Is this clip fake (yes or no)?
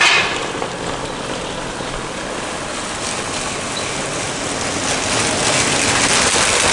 no